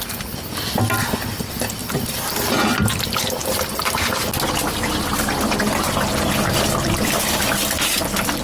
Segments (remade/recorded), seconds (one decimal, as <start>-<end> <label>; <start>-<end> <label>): 0.0-1.8 recorded; 1.8-2.5 remade; 2.5-8.4 recorded

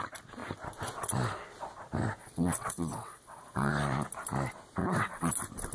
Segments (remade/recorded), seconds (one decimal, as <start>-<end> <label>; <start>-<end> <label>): 0.0-2.2 recorded; 2.2-3.7 remade; 3.7-4.8 recorded; 4.8-5.3 remade; 5.3-5.7 recorded

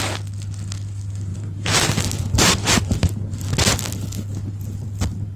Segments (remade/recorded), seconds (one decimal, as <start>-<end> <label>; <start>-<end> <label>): 0.0-1.3 recorded; 1.3-3.5 remade; 3.5-5.4 recorded

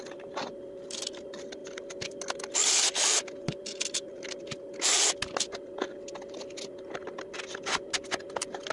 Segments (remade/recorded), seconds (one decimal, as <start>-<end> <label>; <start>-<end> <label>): 0.0-8.7 recorded

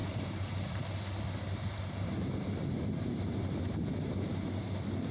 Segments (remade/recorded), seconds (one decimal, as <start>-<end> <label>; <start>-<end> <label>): 0.0-5.1 recorded